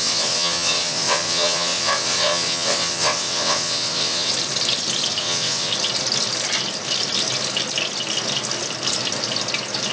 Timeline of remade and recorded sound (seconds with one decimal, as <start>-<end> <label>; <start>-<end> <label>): 0.0-4.3 remade; 4.3-5.2 recorded; 5.2-5.7 remade; 5.7-9.9 recorded